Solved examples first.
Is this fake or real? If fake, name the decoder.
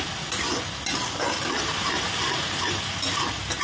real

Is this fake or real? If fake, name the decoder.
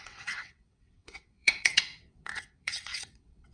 fake, vocoder, WaveNeXt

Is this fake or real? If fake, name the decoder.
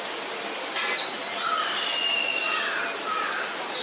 real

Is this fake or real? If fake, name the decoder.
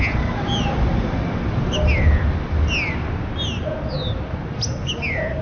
real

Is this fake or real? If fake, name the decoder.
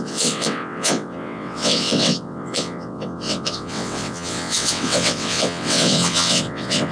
fake, vocoder, WaveNeXt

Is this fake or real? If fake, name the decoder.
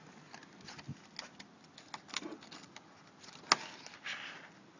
real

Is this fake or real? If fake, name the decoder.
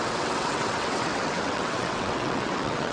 fake, vocoder, WaveNeXt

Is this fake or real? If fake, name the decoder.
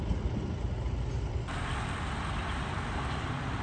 real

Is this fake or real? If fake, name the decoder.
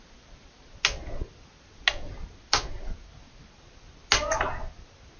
real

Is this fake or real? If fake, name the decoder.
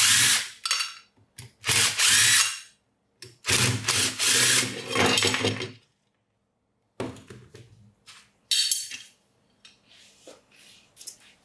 real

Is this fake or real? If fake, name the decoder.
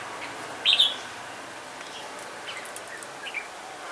real